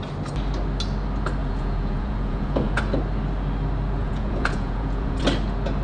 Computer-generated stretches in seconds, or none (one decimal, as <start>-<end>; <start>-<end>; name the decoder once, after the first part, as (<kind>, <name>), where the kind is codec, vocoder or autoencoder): 1.4-2.8 (vocoder, Vocos); 4.0-5.2